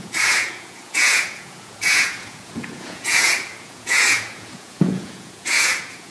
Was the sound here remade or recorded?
remade